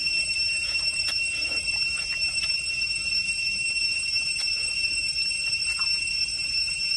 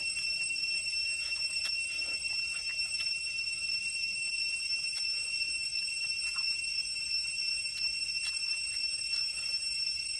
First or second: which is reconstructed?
first